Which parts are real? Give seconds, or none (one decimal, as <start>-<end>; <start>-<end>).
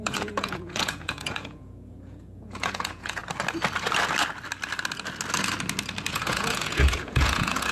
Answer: 3.2-6.1